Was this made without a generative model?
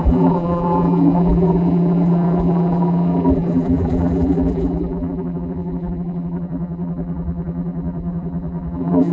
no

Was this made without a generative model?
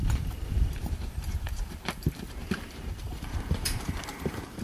no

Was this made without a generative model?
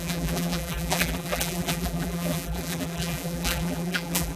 no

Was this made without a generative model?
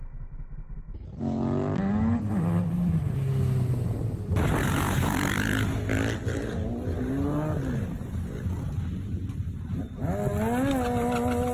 yes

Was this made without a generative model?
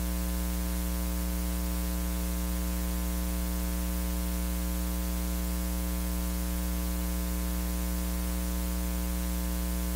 yes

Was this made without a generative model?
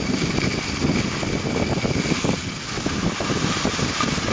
yes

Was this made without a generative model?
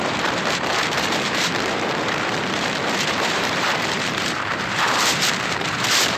no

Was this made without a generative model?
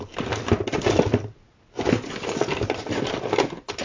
yes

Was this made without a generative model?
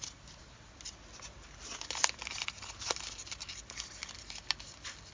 yes